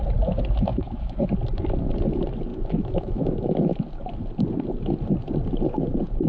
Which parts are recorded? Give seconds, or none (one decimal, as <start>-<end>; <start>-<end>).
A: 0.0-0.7; 1.3-2.5; 3.8-6.3